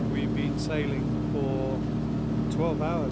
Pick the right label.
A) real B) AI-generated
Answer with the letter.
A